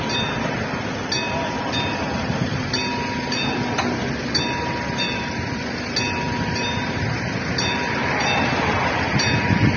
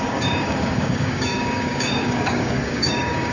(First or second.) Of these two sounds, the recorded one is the first